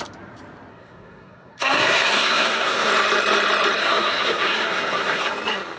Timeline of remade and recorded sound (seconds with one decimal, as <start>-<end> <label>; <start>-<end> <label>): 0.0-0.7 recorded; 0.7-2.9 remade; 2.9-3.8 recorded; 3.8-5.3 remade; 5.3-5.8 recorded